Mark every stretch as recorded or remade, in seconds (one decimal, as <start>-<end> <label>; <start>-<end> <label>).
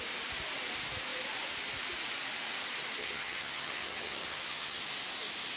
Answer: 0.0-3.0 recorded; 3.0-4.8 remade; 4.8-5.6 recorded